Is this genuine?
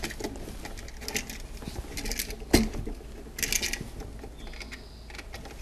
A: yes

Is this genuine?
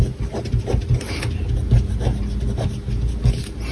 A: yes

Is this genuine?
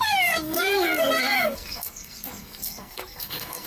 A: no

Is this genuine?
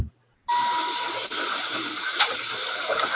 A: no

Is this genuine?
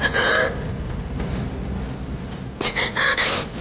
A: yes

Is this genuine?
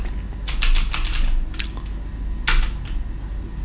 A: yes